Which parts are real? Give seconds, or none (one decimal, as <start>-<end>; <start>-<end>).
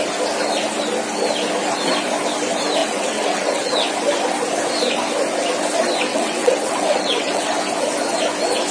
0.0-2.8; 3.9-6.1; 7.6-8.7